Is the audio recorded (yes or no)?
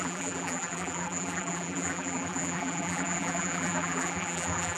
no